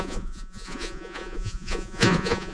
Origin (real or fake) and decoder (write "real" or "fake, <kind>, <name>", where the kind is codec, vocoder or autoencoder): fake, vocoder, Vocos